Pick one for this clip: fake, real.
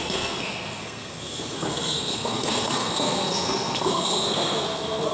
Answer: fake